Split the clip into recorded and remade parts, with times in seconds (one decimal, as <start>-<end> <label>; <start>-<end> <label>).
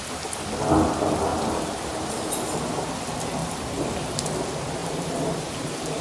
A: 0.0-1.3 recorded; 1.3-2.9 remade; 2.9-3.4 recorded; 3.4-4.2 remade; 4.2-4.8 recorded; 4.8-6.0 remade